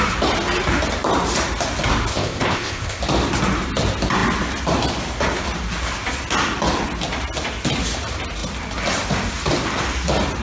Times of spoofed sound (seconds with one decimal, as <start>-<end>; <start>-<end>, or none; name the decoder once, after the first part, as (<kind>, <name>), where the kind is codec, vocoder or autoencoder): 2.1-3.0 (codec, ZipCodec)